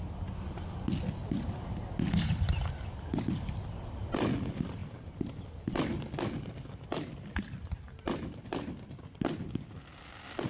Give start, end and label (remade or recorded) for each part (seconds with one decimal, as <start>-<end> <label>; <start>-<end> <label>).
0.0-10.5 recorded